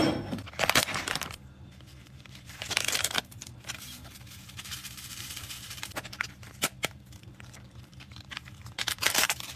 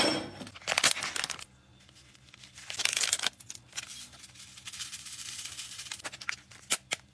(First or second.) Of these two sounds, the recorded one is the second